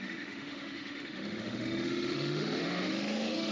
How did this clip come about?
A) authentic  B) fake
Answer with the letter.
B